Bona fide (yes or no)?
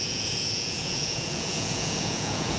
no